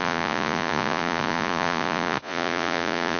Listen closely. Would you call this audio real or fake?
fake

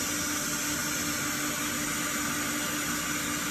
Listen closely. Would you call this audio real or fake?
real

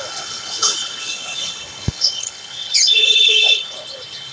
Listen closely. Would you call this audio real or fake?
fake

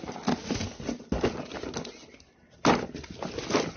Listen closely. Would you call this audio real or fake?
real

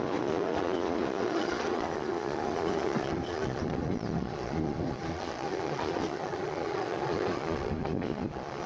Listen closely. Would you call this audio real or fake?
fake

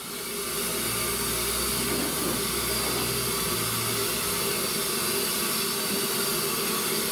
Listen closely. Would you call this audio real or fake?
real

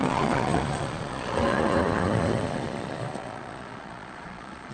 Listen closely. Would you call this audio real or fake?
fake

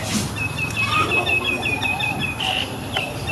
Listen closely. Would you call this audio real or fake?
real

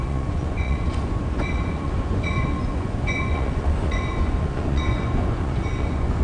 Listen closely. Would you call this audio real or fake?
fake